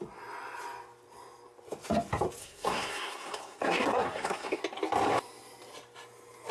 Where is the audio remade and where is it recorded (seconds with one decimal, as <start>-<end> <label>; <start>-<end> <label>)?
0.0-2.4 recorded; 2.4-4.6 remade; 4.6-6.5 recorded